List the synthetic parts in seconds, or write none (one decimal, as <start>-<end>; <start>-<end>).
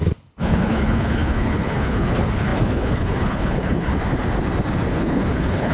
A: 0.0-3.9; 4.9-5.7